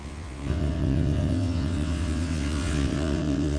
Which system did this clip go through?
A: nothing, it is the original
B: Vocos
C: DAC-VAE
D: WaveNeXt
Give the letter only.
D